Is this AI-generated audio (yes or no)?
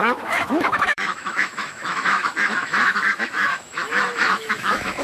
yes